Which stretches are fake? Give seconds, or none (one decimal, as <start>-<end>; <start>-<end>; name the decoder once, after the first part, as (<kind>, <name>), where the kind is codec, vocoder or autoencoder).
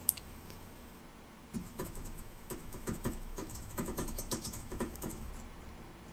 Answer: 0.0-1.0 (autoencoder, DAC-VAE); 1.6-5.3